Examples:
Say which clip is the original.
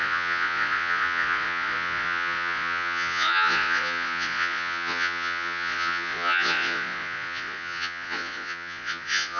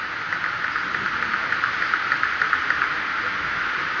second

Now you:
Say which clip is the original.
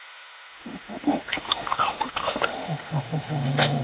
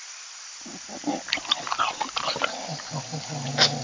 second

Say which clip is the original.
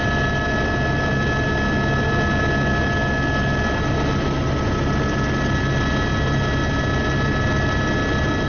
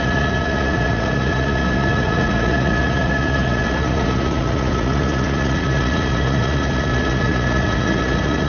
first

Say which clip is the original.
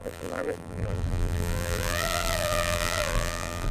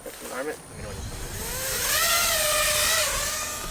second